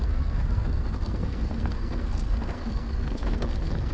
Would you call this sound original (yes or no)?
no